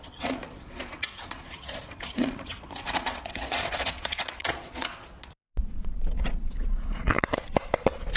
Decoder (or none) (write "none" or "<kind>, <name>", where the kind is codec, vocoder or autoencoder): vocoder, Vocos